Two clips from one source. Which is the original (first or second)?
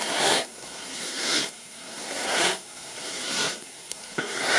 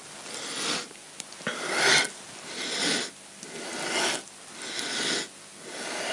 second